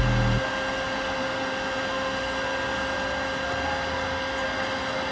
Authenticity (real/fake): real